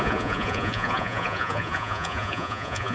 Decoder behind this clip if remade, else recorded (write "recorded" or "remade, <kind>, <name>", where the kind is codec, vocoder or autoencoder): remade, vocoder, Vocos